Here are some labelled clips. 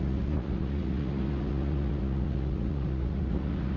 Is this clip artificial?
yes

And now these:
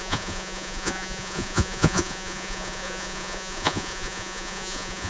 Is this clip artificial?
yes